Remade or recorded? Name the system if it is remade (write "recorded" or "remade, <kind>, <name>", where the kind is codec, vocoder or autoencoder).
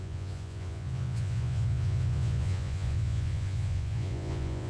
remade, vocoder, Vocos